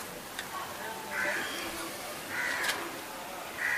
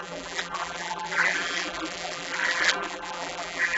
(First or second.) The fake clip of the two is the second